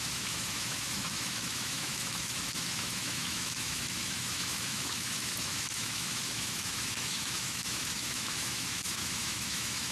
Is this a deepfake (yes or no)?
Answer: yes